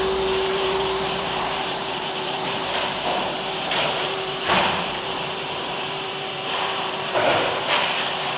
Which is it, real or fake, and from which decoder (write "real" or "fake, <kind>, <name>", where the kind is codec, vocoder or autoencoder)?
fake, vocoder, BigVGAN v2